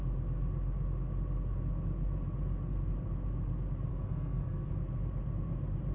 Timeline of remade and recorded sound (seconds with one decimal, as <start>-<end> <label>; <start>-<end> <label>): 0.0-3.9 recorded; 3.9-4.7 remade; 4.7-5.9 recorded